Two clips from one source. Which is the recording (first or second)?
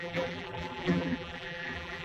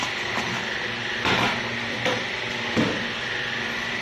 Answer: second